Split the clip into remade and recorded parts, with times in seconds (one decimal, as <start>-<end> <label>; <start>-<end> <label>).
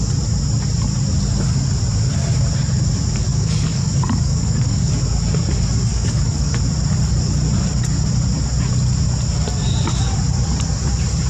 0.0-3.3 recorded; 3.3-4.9 remade; 4.9-5.9 recorded; 5.9-6.6 remade; 6.6-11.3 recorded